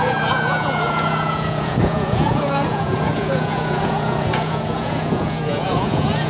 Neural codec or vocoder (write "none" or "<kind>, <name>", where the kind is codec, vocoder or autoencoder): vocoder, Vocos